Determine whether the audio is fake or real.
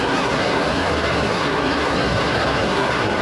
fake